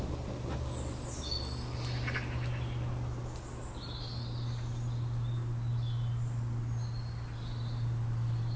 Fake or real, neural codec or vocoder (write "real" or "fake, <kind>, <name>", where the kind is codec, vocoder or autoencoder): real